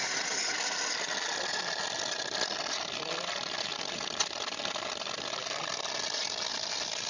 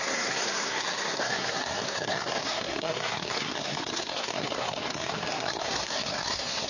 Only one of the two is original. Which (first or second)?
first